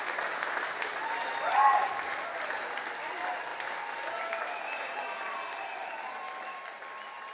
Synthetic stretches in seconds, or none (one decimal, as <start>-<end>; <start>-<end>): none